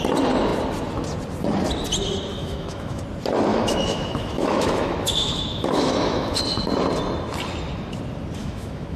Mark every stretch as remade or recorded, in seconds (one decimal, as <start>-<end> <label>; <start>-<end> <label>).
0.0-2.4 recorded; 2.4-3.0 remade; 3.0-3.5 recorded; 3.5-6.4 remade; 6.4-8.4 recorded; 8.4-9.0 remade